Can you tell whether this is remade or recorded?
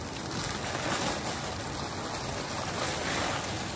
recorded